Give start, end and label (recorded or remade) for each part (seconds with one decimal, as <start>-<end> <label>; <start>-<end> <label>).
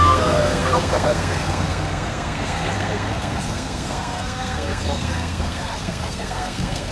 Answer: 0.0-6.9 remade